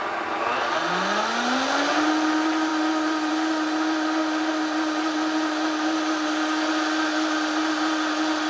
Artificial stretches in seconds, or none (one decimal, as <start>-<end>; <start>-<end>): none